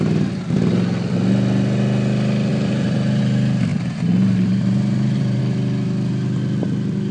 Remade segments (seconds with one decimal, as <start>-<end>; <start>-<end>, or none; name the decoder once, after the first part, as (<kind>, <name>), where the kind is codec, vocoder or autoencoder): 2.5-3.2 (vocoder, BigVGAN v2); 3.7-5.4